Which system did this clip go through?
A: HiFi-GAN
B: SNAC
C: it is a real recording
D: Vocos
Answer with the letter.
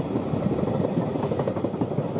C